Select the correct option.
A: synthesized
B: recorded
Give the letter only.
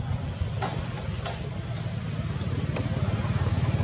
B